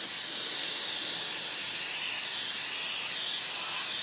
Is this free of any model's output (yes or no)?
yes